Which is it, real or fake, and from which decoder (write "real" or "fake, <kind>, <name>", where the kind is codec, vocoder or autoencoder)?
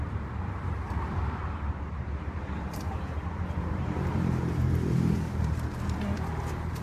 fake, vocoder, BigVGAN v2